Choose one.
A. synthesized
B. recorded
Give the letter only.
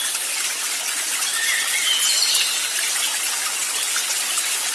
B